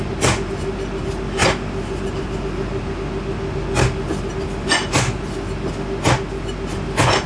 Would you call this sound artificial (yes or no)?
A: no